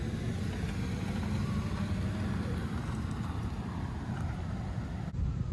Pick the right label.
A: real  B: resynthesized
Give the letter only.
A